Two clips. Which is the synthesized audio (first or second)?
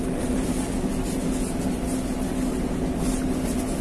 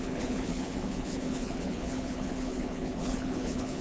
second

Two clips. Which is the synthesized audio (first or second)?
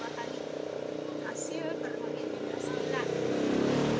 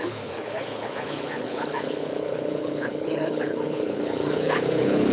second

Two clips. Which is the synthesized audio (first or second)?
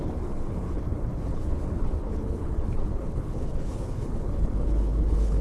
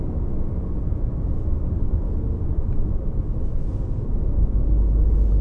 first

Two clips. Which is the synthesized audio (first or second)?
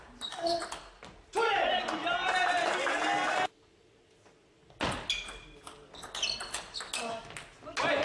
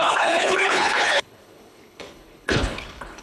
second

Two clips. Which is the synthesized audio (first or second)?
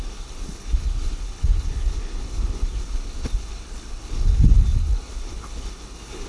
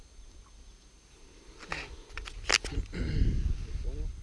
first